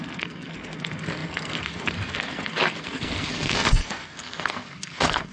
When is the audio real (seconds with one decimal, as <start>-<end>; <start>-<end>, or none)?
none